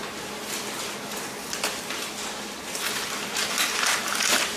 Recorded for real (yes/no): yes